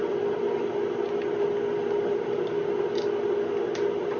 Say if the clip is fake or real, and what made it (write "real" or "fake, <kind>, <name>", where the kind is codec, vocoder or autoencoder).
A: real